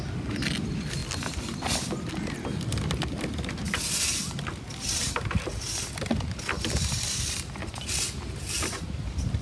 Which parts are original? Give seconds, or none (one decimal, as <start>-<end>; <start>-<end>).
0.0-9.4

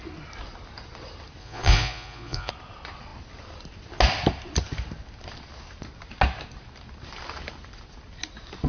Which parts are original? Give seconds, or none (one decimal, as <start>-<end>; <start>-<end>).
0.0-1.4; 2.5-8.7